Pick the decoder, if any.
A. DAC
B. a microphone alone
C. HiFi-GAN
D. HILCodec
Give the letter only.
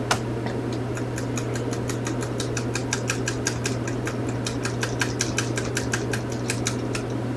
B